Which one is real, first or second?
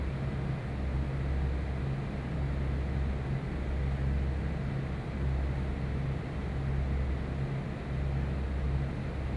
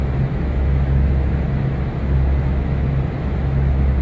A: first